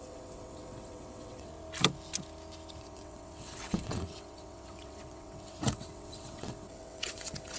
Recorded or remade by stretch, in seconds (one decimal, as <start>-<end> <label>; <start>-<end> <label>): 0.0-1.5 remade; 1.5-2.8 recorded; 2.8-7.6 remade